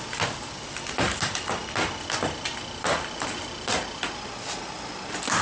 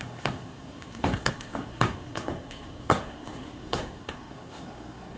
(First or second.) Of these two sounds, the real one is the first